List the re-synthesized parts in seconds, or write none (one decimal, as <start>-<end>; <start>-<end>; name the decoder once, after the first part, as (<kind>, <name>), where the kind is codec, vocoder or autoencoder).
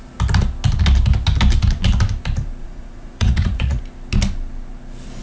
2.6-3.8 (vocoder, Vocos)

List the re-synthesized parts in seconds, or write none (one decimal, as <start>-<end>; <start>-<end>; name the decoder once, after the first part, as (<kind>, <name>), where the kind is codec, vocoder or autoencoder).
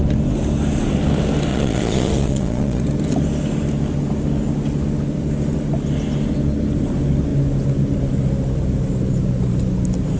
1.5-2.8 (vocoder, Vocos)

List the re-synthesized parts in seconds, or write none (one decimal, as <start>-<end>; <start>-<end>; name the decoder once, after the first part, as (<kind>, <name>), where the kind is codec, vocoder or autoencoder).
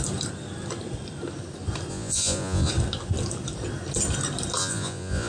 1.9-2.7 (vocoder, Vocos); 4.6-5.3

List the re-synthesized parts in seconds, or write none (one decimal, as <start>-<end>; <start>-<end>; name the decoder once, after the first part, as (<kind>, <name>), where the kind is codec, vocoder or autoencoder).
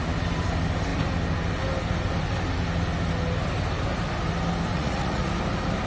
4.7-5.3 (vocoder, Vocos)